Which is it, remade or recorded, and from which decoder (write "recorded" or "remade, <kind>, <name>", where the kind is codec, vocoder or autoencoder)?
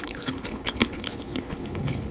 remade, codec, HILCodec